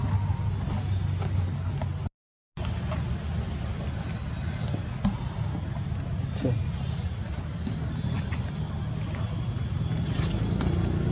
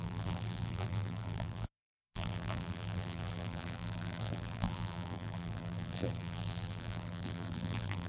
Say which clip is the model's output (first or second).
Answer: second